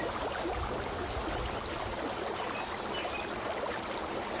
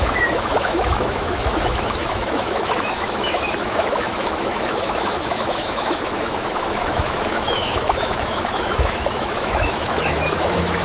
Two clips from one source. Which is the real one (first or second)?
first